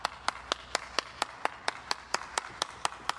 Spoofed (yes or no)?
no